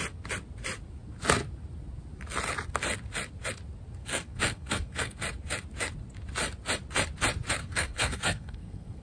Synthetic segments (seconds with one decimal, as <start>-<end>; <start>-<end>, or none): 4.0-5.2; 7.6-9.0